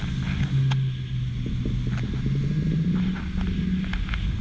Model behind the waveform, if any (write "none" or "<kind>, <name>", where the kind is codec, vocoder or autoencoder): none